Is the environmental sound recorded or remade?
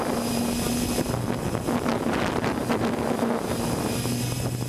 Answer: recorded